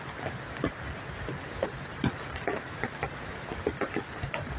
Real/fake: real